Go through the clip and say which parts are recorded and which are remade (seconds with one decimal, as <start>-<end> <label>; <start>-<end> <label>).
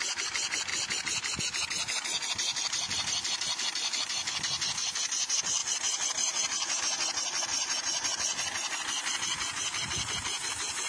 0.0-10.9 recorded